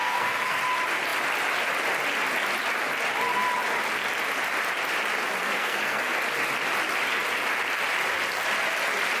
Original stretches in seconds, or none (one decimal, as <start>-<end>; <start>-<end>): 0.6-5.4; 6.1-9.2